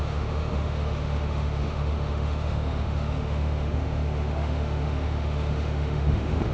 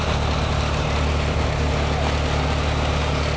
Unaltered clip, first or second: second